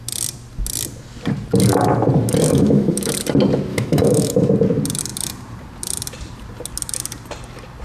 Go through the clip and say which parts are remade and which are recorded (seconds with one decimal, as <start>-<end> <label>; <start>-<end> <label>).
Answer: 0.0-2.5 recorded; 2.5-3.1 remade; 3.1-3.7 recorded; 3.7-4.5 remade; 4.5-7.8 recorded